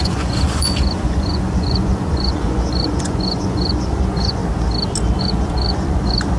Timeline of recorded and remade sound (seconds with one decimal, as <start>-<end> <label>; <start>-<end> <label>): 0.0-4.4 remade; 4.4-5.2 recorded; 5.2-6.4 remade